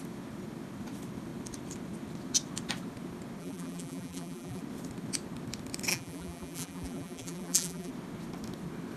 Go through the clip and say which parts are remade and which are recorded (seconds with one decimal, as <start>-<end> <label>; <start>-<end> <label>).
0.0-3.4 recorded; 3.4-4.6 remade; 4.6-5.9 recorded; 5.9-7.9 remade; 7.9-9.0 recorded